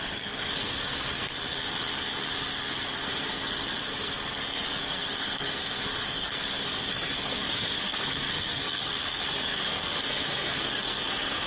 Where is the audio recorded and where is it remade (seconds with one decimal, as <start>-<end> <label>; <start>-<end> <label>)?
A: 0.0-1.3 remade; 1.3-2.7 recorded; 2.7-11.5 remade